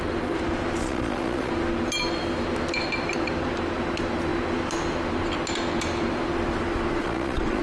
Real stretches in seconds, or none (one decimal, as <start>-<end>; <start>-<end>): 0.0-0.8; 1.5-7.0